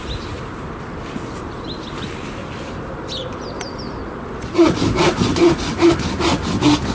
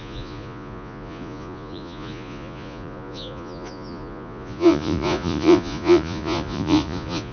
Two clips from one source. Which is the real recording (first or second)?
first